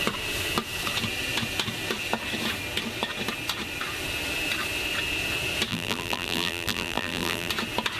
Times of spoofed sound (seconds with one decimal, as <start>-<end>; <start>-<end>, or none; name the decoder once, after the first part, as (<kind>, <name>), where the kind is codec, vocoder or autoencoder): 5.7-7.5 (vocoder, BigVGAN v2)